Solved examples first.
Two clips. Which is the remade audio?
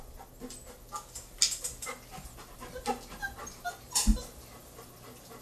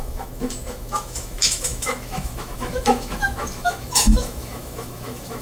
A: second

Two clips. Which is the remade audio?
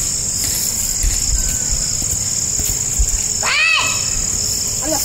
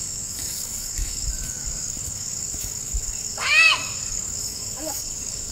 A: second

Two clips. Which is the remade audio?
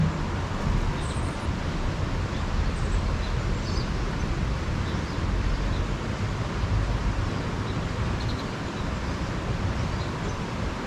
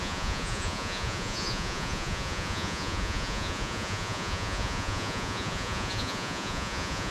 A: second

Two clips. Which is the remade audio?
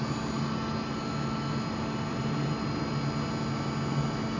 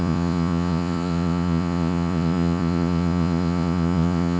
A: second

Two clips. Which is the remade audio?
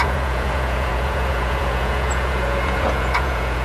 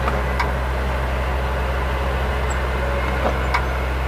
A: first